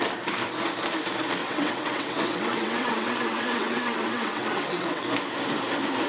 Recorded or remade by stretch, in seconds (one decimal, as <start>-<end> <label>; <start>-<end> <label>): 0.0-1.4 recorded; 1.4-5.1 remade; 5.1-6.1 recorded